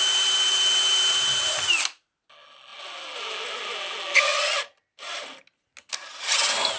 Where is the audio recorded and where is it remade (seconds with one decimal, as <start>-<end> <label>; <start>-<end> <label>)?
0.0-6.8 recorded